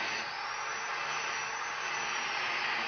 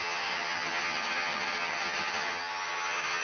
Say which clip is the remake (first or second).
second